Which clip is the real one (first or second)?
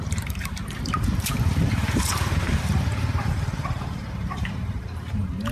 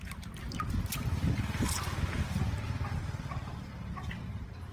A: second